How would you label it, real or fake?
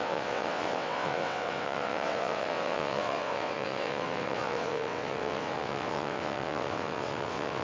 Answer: fake